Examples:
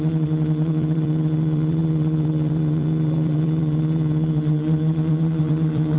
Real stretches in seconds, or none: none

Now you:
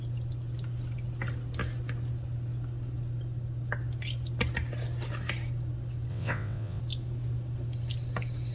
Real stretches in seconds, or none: 0.0-6.1; 6.8-8.5

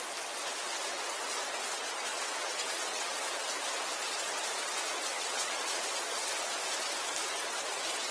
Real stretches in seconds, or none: 0.0-2.1; 3.2-5.1; 5.8-8.1